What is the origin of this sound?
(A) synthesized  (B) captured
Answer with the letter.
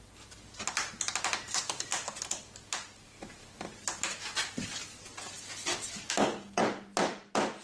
B